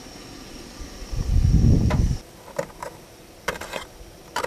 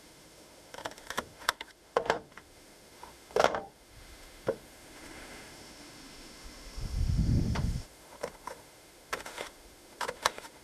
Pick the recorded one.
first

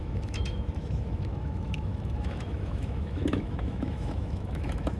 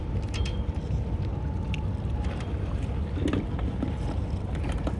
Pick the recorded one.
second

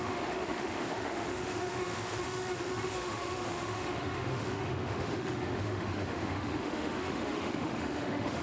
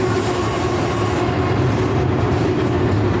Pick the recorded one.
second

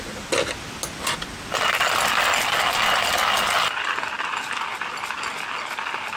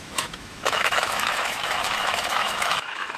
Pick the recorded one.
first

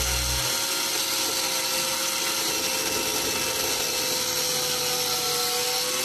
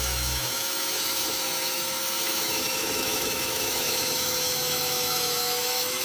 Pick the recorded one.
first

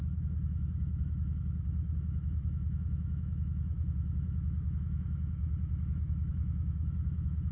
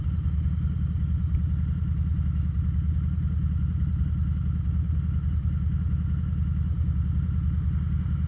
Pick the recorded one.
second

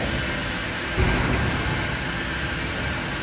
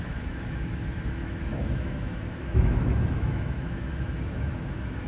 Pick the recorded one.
first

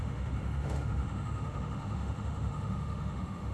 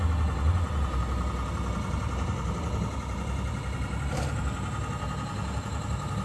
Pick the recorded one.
second